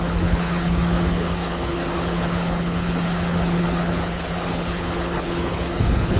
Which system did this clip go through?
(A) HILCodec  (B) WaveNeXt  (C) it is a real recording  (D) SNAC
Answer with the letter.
A